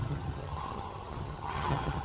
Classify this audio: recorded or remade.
remade